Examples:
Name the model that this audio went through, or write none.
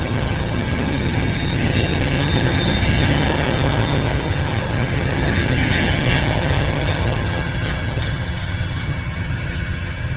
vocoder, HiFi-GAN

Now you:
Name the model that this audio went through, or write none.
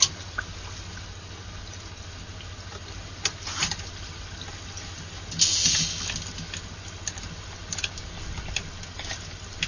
none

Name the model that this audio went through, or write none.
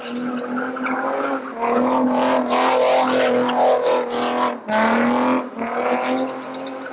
none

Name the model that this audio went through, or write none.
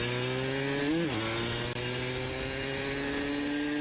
none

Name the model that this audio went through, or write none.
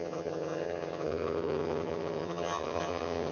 vocoder, HiFi-GAN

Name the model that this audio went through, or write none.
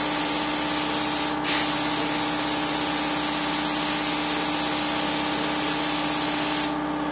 none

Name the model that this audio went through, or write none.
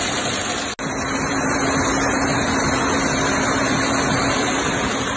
none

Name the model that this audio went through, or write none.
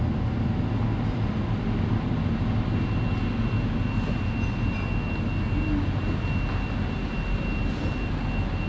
none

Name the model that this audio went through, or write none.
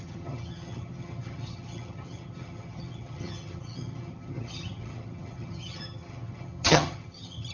vocoder, HiFi-GAN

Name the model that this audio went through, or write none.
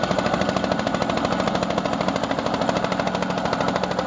none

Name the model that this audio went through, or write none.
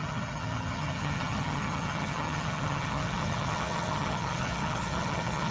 vocoder, HiFi-GAN